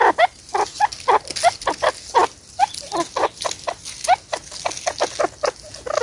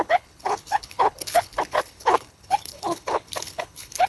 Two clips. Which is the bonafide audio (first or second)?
first